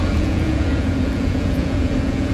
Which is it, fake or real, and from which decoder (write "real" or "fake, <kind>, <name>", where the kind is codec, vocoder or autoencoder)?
fake, vocoder, Vocos